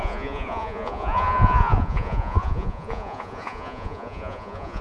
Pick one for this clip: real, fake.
fake